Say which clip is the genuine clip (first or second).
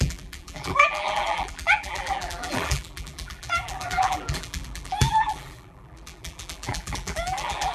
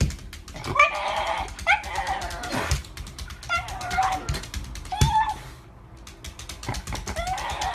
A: second